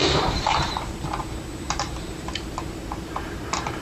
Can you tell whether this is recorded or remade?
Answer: remade